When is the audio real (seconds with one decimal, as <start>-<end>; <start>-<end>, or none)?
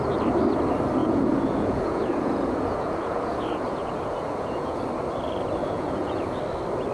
0.0-1.0; 4.8-5.6; 6.4-6.9